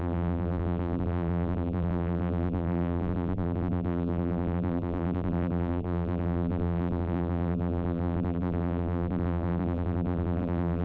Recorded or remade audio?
remade